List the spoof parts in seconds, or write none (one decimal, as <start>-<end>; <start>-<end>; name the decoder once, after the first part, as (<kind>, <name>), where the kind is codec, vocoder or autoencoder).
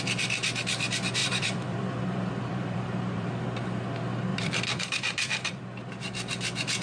1.2-3.4 (vocoder, BigVGAN v2); 4.3-5.6